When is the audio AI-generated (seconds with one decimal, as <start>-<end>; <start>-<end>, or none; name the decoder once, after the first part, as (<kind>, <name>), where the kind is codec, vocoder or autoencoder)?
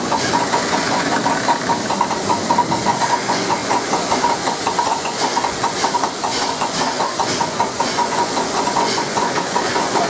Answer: 0.0-1.1 (vocoder, Vocos); 2.8-10.1